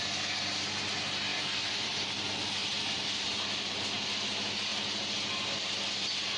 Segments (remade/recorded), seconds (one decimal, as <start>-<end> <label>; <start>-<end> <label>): 0.0-1.3 recorded; 1.3-2.2 remade; 2.2-2.6 recorded; 2.6-3.7 remade; 3.7-6.4 recorded

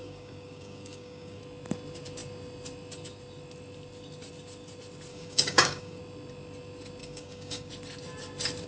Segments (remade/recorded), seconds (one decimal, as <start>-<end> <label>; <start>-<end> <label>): 0.0-1.4 remade; 1.4-5.1 recorded; 5.1-6.0 remade; 6.0-7.0 recorded; 7.0-7.7 remade; 7.7-8.7 recorded